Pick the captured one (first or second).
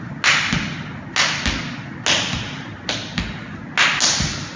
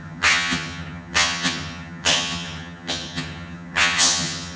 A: first